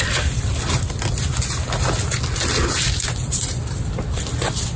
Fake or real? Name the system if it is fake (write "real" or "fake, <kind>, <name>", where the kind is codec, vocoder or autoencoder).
real